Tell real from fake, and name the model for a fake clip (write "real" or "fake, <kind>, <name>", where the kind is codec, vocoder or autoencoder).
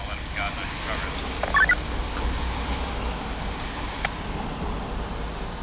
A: real